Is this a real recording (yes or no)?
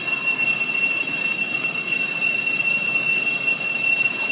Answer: yes